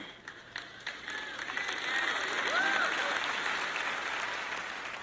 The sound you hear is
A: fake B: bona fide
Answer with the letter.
B